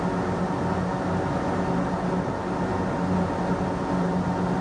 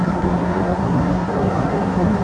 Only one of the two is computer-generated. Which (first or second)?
second